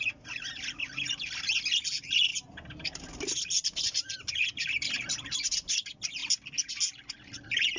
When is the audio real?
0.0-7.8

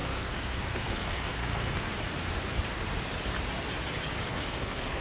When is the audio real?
1.9-4.3

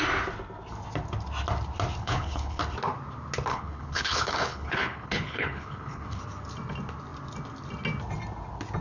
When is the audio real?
0.0-2.0; 2.6-3.5; 6.2-8.8

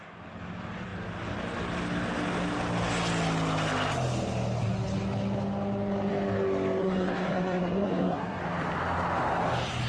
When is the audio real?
0.0-6.8; 8.4-9.9

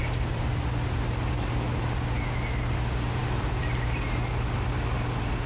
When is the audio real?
0.0-5.5